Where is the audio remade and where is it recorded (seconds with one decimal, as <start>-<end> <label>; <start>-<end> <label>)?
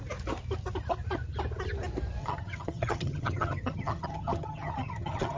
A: 0.0-2.2 recorded; 2.2-5.4 remade